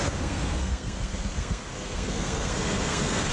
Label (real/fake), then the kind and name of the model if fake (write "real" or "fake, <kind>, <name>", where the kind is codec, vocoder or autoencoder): fake, codec, SNAC